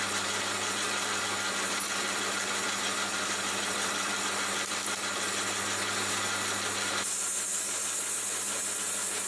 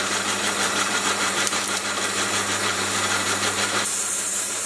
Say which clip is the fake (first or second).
second